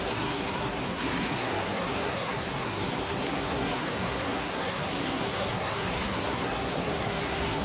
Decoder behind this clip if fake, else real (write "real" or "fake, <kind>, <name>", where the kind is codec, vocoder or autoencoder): fake, codec, SNAC